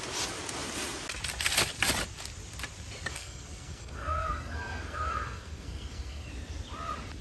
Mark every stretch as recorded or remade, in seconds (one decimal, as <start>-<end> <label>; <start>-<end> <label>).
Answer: 0.0-3.1 recorded; 3.1-6.3 remade; 6.3-7.2 recorded